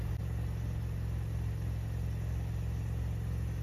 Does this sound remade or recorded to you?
recorded